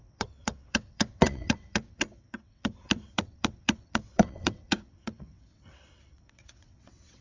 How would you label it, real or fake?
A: fake